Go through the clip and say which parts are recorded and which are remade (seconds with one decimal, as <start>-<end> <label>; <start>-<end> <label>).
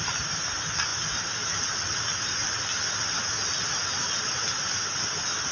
0.0-5.5 recorded